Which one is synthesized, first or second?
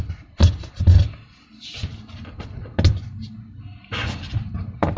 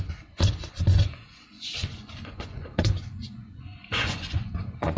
second